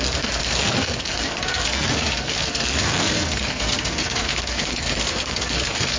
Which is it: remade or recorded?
remade